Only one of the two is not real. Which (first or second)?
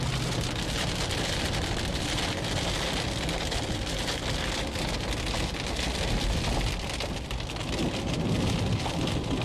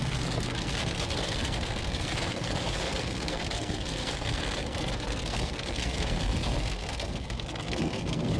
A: second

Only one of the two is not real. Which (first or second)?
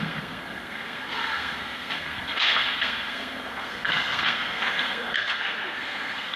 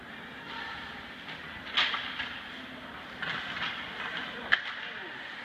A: first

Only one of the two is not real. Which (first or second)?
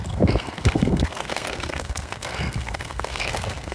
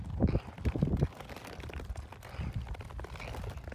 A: first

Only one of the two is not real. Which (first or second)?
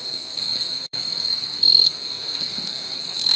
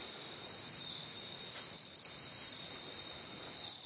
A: first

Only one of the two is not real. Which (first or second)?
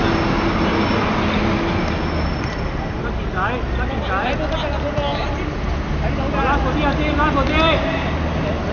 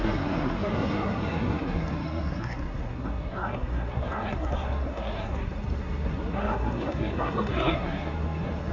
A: second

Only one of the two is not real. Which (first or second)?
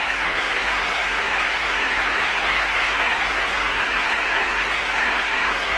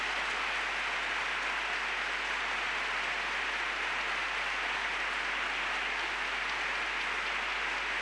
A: first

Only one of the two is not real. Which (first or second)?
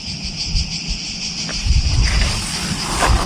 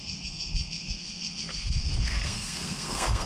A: second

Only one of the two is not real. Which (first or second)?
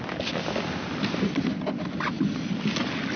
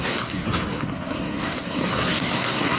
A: second